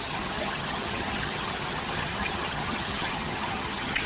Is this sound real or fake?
fake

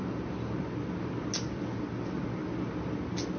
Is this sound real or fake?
real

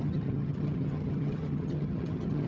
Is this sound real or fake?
fake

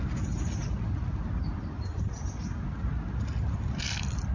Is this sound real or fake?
real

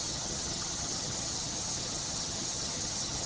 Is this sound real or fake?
fake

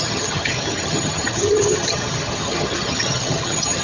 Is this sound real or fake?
fake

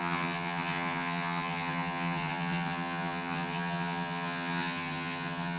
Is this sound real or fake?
fake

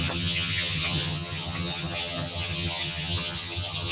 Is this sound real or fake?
fake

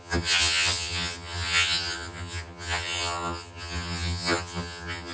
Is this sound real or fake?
fake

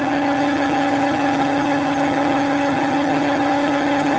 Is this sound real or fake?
fake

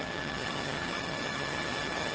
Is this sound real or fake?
fake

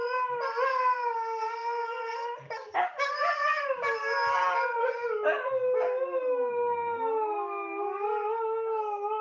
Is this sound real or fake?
real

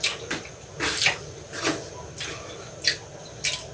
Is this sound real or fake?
real